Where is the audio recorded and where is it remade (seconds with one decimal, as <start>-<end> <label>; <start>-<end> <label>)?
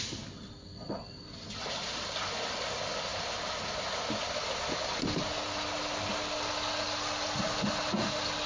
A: 0.0-8.5 recorded